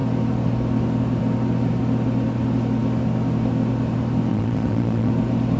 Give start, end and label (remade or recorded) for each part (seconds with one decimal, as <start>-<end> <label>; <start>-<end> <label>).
0.0-4.3 recorded; 4.3-5.1 remade; 5.1-5.6 recorded